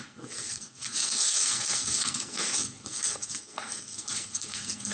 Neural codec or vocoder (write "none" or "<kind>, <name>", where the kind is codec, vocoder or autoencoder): codec, SNAC